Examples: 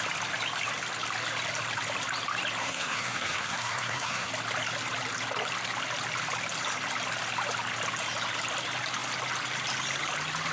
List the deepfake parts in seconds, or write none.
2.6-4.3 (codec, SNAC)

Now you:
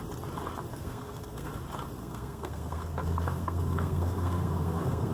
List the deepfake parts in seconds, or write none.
0.7-1.5 (codec, SNAC); 2.0-5.1

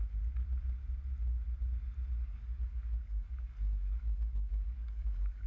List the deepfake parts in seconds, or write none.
2.2-5.5 (codec, DAC)

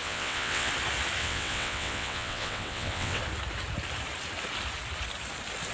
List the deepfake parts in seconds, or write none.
0.0-0.7 (vocoder, WaveNeXt); 1.2-3.2

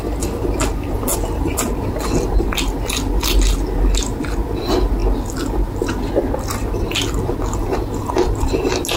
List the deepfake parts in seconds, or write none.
none